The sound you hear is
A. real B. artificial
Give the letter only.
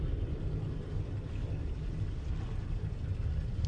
A